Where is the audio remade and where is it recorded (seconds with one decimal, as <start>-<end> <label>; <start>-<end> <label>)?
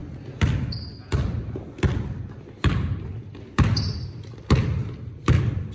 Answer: 0.0-5.7 recorded